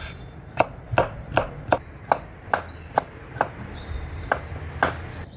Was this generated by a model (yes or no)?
no